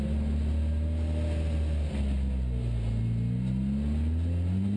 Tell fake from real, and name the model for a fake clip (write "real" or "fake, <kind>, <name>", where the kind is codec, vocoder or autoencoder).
real